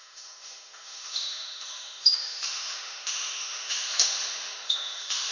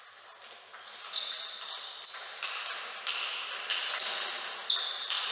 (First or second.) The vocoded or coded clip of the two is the first